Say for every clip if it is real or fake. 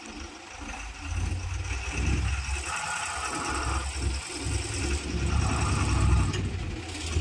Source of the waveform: real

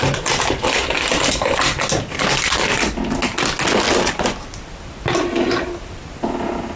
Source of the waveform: real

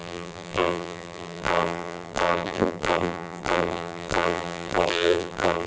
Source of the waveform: fake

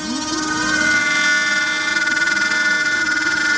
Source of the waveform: real